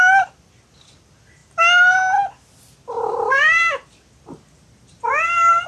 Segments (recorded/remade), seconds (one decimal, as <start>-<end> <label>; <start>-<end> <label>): 0.0-5.7 recorded